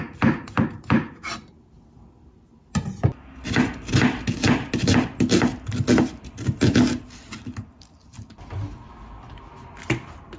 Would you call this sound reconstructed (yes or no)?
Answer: no